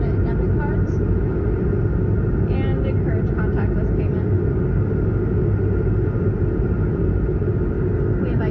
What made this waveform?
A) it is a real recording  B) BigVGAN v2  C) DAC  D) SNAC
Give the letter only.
A